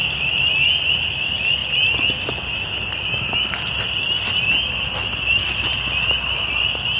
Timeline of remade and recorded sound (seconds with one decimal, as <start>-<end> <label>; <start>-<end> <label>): 0.0-7.0 recorded